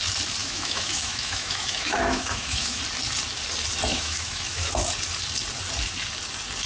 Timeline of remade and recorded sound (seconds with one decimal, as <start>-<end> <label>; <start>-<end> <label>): 0.0-0.4 recorded; 0.4-2.8 remade; 2.8-3.9 recorded; 3.9-4.7 remade; 4.7-6.7 recorded